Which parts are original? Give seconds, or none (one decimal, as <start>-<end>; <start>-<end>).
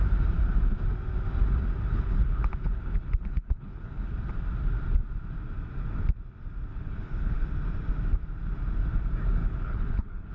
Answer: 0.0-1.9; 4.1-6.7; 7.5-9.4